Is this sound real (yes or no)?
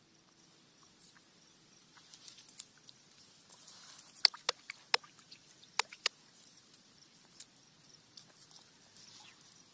yes